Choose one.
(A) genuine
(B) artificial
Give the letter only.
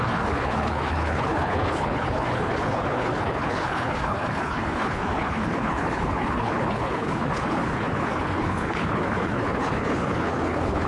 B